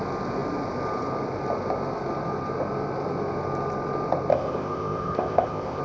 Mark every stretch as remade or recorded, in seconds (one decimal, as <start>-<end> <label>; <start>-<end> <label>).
0.0-4.3 recorded; 4.3-5.8 remade